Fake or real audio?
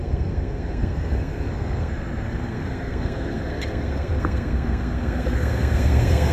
fake